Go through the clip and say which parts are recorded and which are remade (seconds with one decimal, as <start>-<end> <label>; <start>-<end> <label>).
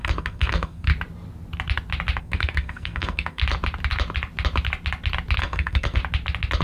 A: 0.0-0.9 remade; 0.9-2.2 recorded; 2.2-3.4 remade; 3.4-5.4 recorded; 5.4-6.0 remade; 6.0-6.6 recorded